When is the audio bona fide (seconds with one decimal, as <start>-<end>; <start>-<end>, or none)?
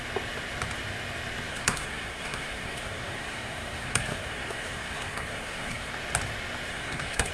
0.0-1.5; 5.9-6.7